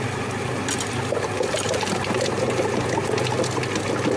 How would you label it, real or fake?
real